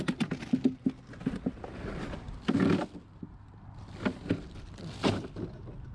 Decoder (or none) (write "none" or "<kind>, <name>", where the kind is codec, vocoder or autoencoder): none